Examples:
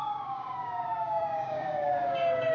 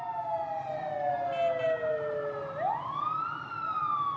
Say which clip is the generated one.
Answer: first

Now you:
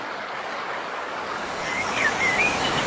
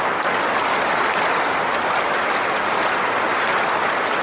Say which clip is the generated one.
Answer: first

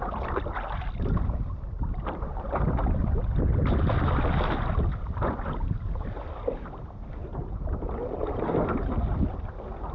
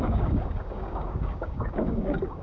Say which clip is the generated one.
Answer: second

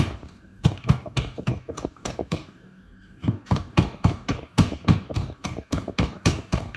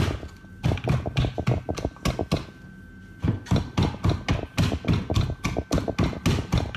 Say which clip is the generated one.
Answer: first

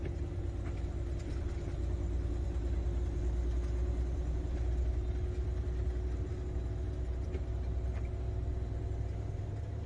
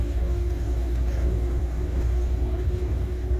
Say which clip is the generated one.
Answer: second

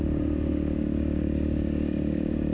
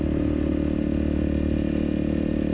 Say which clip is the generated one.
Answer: first